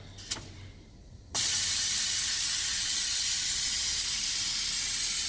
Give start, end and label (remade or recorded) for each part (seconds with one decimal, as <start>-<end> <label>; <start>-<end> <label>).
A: 0.0-1.0 recorded; 1.0-1.5 remade; 1.5-2.7 recorded; 2.7-3.7 remade; 3.7-5.3 recorded